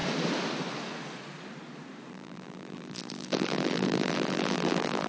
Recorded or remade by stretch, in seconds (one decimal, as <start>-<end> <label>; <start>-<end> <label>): 0.0-2.1 recorded; 2.1-5.1 remade